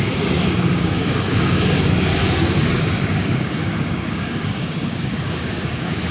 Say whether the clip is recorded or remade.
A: remade